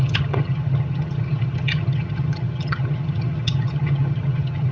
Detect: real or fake fake